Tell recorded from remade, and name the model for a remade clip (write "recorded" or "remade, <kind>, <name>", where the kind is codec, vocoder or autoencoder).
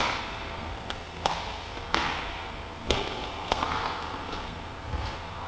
remade, codec, SNAC